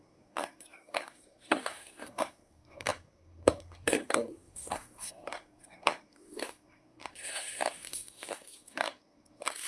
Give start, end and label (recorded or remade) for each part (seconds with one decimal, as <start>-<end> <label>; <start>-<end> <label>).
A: 0.0-9.7 remade